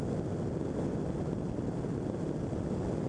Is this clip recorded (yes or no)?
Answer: yes